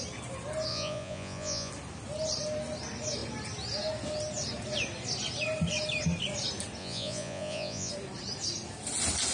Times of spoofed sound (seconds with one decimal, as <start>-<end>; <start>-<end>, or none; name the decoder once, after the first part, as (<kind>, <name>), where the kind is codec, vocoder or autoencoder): 0.7-1.7 (vocoder, Vocos); 6.8-7.9